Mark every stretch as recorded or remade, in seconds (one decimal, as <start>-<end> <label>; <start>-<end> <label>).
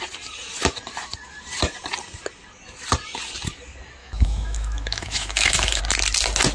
0.0-4.0 recorded; 4.0-5.8 remade; 5.8-6.5 recorded